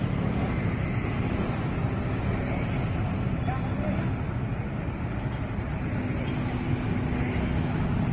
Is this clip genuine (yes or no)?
yes